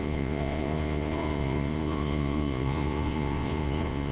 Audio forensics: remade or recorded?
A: remade